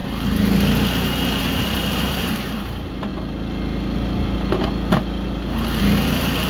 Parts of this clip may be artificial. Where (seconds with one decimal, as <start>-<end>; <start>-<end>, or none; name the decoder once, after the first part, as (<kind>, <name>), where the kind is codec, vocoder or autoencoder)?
1.4-3.1 (vocoder, BigVGAN v2); 5.8-6.5